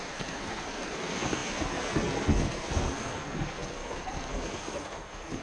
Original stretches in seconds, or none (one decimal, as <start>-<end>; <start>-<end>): none